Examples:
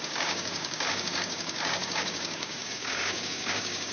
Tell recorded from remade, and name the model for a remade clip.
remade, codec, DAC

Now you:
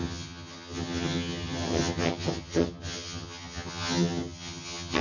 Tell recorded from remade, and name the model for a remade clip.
remade, vocoder, HiFi-GAN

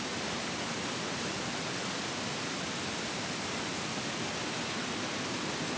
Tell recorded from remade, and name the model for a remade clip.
recorded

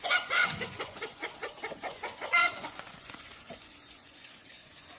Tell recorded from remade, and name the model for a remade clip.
remade, vocoder, Vocos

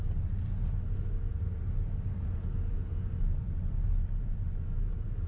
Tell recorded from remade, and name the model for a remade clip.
recorded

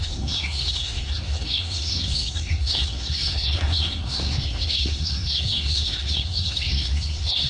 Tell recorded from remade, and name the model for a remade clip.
remade, codec, SNAC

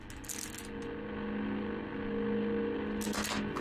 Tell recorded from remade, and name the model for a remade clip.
recorded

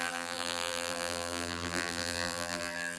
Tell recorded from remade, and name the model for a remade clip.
remade, vocoder, BigVGAN v2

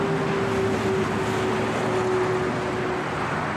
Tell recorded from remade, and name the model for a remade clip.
recorded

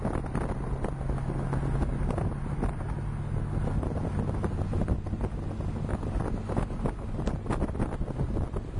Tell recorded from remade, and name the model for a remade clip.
recorded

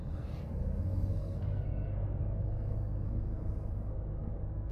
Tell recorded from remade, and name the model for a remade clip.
remade, codec, SNAC